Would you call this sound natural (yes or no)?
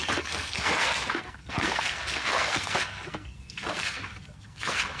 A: no